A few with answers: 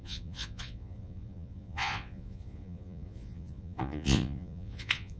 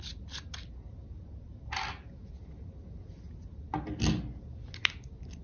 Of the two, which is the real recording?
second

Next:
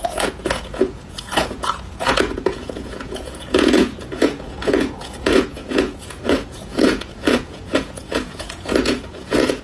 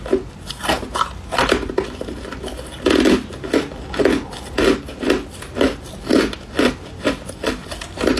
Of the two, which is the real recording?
second